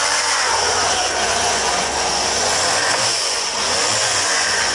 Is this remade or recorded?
remade